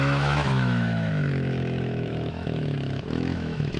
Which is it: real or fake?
fake